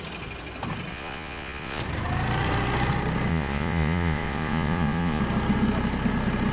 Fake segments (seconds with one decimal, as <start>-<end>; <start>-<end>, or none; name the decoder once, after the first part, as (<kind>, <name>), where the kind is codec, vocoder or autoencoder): 0.9-1.8 (vocoder, Vocos); 3.3-5.2

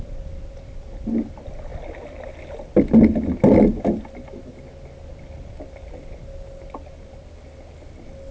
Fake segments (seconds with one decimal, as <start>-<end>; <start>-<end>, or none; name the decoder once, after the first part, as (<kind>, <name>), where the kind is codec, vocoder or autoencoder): none

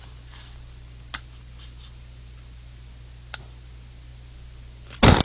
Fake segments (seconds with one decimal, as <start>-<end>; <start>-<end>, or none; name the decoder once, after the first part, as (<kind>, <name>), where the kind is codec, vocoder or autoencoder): none

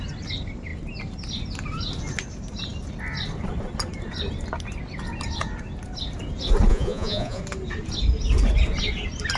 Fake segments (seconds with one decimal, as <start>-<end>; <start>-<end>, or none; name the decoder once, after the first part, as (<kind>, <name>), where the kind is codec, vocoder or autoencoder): 6.7-7.4 (vocoder, Vocos)

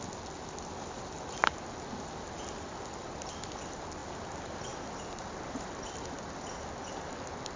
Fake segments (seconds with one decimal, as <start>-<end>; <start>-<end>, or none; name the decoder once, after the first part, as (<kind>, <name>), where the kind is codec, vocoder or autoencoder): none

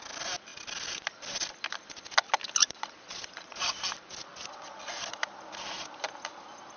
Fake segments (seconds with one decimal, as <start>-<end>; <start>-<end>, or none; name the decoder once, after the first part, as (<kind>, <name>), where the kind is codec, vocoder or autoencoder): 2.6-3.8 (vocoder, Vocos)

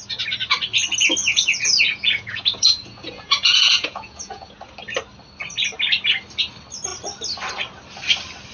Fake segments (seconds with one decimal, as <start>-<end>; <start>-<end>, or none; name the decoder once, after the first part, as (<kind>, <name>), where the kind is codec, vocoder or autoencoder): 1.2-4.7 (vocoder, Vocos)

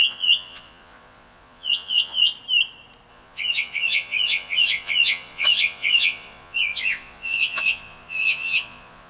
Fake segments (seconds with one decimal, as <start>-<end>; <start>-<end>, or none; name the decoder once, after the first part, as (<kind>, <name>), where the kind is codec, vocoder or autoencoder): 0.0-2.3 (vocoder, Vocos); 3.1-9.1